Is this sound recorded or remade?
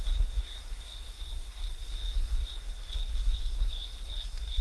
remade